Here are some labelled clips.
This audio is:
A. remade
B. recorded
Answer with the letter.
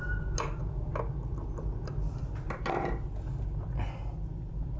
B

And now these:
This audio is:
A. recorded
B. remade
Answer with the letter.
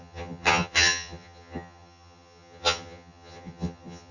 B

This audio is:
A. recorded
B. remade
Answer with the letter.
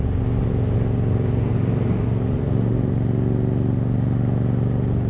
A